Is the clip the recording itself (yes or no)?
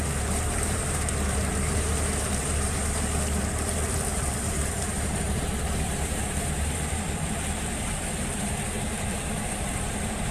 no